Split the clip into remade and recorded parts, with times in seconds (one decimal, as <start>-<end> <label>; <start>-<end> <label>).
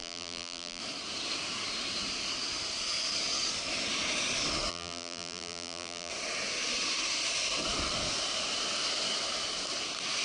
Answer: 0.0-0.8 remade; 0.8-4.7 recorded; 4.7-6.1 remade; 6.1-10.2 recorded